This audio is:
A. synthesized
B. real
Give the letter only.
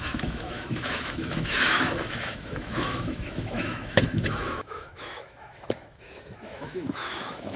A